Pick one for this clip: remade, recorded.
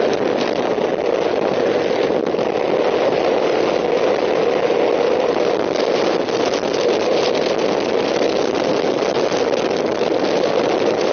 recorded